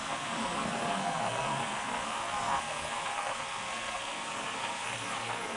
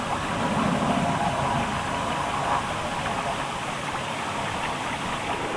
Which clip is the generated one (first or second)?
first